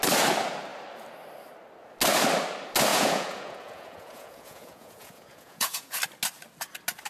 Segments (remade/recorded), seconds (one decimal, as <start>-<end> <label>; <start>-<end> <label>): 0.0-2.9 recorded; 2.9-6.0 remade; 6.0-7.1 recorded